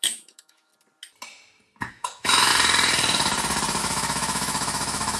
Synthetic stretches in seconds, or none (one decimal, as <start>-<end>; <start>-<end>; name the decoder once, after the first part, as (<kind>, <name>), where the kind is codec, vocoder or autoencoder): 0.0-0.7 (autoencoder, DAC-VAE); 1.9-2.5; 3.8-5.2